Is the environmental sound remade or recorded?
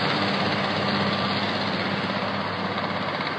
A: recorded